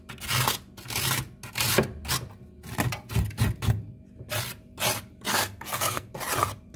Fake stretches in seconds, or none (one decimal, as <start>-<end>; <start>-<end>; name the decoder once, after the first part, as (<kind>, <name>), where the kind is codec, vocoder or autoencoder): 5.3-6.1 (codec, SNAC)